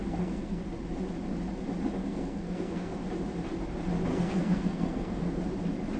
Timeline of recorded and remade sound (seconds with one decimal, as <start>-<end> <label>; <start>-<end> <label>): 0.0-0.6 remade; 0.6-2.0 recorded; 2.0-3.0 remade; 3.0-4.1 recorded; 4.1-5.4 remade; 5.4-6.0 recorded